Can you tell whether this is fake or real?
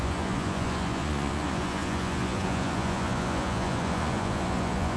fake